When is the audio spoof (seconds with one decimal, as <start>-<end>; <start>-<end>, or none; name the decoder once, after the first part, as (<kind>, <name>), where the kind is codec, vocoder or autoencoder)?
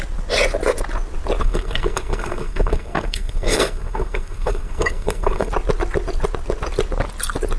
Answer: 1.4-5.5 (codec, SNAC)